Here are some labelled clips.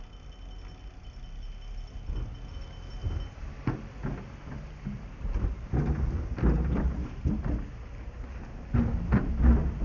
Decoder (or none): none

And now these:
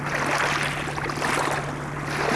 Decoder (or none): none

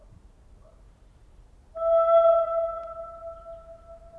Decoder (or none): none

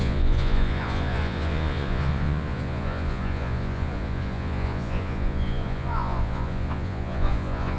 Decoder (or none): vocoder, Vocos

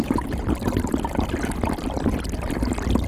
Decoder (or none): none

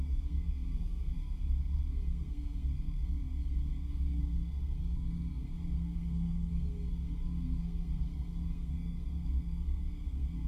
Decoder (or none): codec, SNAC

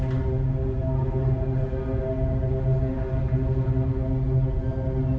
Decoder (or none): none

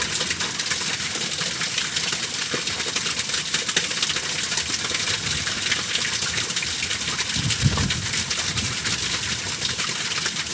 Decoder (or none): none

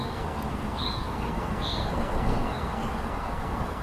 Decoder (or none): codec, SNAC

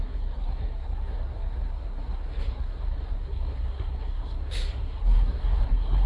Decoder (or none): codec, SNAC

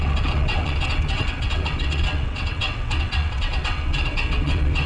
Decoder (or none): vocoder, WaveNeXt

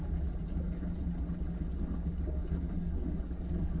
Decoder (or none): none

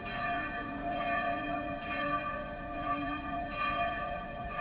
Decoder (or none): vocoder, Vocos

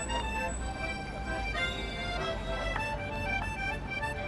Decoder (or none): none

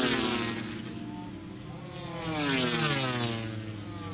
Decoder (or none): none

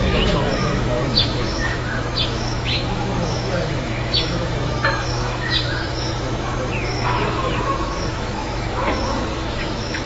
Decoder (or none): autoencoder, DAC-VAE